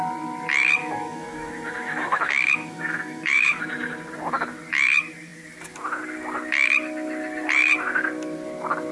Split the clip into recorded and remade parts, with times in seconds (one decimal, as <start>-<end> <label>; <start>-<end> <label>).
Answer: 0.0-0.8 recorded; 0.8-3.6 remade; 3.6-8.9 recorded